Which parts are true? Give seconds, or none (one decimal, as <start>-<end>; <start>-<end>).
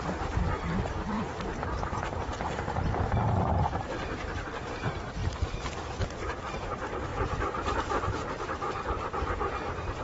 7.1-8.4